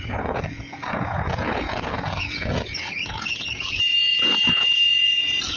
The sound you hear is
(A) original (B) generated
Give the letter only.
B